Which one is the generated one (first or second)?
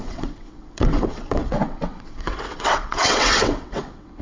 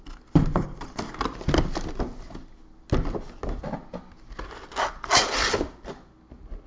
first